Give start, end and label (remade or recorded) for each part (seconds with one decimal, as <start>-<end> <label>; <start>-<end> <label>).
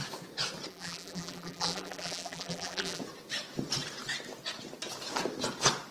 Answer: 0.0-0.7 recorded; 0.7-3.0 remade; 3.0-5.9 recorded